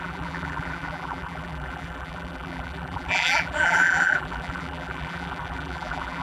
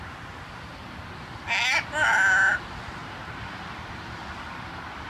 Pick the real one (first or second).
second